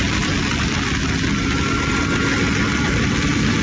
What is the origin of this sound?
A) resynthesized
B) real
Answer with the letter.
B